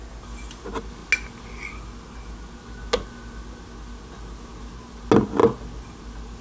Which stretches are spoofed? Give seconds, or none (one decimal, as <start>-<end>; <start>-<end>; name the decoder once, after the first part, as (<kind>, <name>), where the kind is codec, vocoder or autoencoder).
none